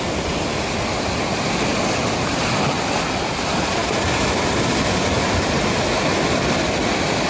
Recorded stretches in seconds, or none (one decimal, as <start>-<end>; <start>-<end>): 1.7-2.9; 3.8-4.5